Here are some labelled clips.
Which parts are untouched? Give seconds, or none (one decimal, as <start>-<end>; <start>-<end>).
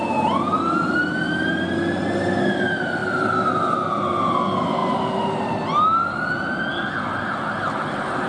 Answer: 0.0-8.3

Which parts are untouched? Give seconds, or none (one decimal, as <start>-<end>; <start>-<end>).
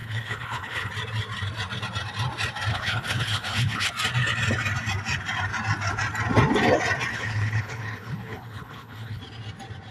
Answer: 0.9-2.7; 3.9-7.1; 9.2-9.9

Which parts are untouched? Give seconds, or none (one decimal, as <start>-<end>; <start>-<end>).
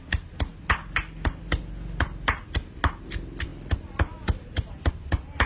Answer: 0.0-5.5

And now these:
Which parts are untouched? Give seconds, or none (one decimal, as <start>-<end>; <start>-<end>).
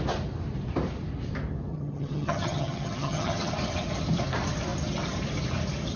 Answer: 0.0-1.7; 3.5-6.0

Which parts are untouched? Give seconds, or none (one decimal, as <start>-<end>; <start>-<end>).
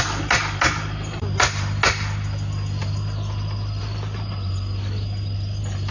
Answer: 0.0-5.9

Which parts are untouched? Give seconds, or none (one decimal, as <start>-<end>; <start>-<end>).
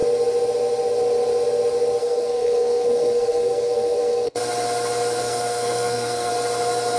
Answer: 0.0-2.0; 4.4-5.2; 6.3-7.0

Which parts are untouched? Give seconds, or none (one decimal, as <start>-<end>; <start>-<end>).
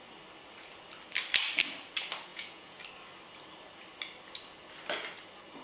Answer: 0.0-2.3; 2.8-5.6